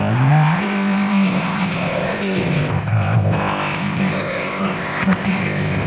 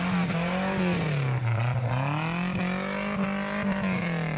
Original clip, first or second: second